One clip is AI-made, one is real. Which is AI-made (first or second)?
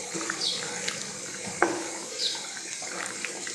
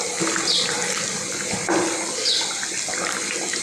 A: first